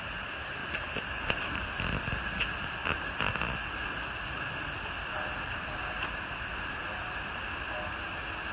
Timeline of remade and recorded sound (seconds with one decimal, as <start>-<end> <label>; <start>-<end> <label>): 0.0-2.8 recorded; 2.8-3.3 remade; 3.3-8.5 recorded